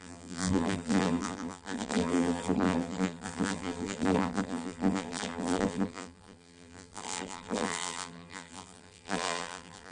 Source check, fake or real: fake